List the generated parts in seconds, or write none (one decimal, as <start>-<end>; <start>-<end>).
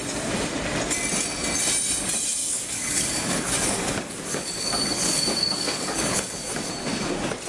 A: 2.4-6.7